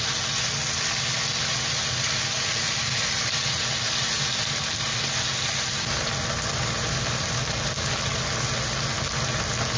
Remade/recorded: recorded